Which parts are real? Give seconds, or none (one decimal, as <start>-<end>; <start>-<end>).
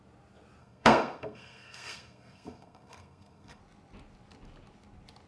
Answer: 0.0-0.6; 3.6-5.3